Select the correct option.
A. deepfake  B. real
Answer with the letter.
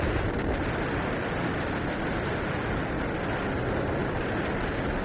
B